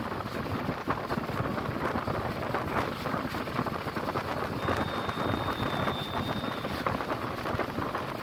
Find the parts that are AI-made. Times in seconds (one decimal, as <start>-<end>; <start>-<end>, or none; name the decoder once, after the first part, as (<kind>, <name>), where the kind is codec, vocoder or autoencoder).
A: none

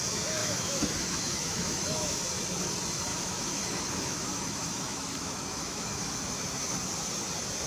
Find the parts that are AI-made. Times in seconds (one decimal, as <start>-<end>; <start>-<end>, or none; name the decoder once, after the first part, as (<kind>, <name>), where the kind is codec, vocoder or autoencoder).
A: 0.4-2.2 (autoencoder, DAC-VAE); 3.1-6.3

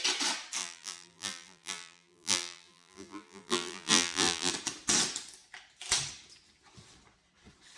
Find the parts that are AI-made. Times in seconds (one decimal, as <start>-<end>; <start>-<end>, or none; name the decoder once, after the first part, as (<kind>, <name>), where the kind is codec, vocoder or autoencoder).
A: 0.6-4.5 (vocoder, BigVGAN v2)

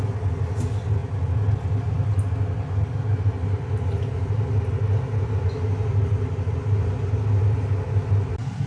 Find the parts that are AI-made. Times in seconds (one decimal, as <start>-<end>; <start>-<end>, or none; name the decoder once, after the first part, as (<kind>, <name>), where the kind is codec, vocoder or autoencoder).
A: none

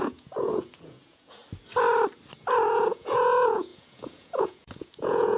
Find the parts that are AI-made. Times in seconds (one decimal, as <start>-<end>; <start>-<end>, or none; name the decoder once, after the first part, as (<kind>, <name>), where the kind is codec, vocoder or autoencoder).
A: 0.0-1.4 (vocoder, Vocos); 2.5-5.4

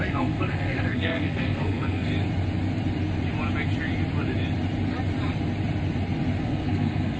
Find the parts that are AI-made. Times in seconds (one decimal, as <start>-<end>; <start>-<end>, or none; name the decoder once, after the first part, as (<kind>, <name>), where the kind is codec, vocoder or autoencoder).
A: 0.0-2.1 (codec, SNAC); 6.4-7.2

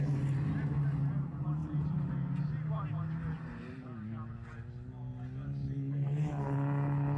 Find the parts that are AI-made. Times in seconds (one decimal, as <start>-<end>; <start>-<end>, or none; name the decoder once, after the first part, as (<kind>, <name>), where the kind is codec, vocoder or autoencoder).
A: 1.6-2.1 (vocoder, BigVGAN v2)

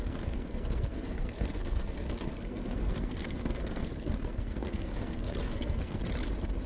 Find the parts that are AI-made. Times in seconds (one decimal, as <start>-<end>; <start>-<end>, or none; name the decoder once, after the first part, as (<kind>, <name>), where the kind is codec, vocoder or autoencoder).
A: 0.0-6.0 (codec, SNAC)